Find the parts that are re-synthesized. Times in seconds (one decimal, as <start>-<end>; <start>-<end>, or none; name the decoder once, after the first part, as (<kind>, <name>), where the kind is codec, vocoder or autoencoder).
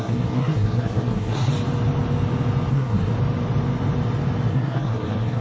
0.0-1.5 (codec, SNAC); 2.7-3.1; 4.5-5.4